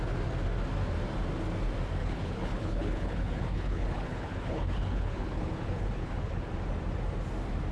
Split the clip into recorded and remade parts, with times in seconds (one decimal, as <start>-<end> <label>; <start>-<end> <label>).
0.0-2.0 recorded; 2.0-6.5 remade; 6.5-7.7 recorded